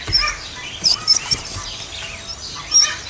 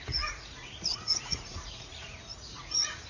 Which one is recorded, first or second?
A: first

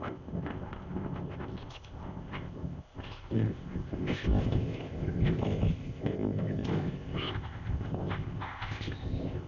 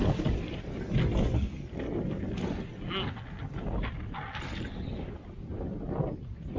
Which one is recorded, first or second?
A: second